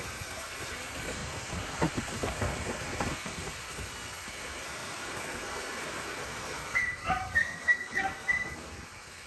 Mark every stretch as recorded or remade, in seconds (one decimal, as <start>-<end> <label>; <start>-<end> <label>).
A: 0.0-9.3 remade